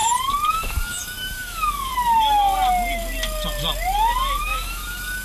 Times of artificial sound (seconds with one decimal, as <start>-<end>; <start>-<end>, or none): 0.5-1.9; 4.4-5.2